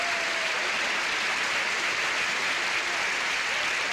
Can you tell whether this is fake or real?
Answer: real